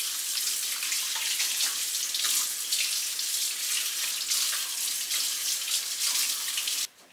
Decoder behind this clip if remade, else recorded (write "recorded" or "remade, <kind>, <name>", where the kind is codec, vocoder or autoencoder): recorded